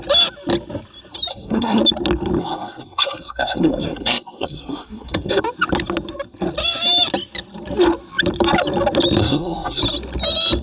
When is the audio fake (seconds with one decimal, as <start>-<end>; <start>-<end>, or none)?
1.3-1.8; 2.4-5.4; 9.2-9.8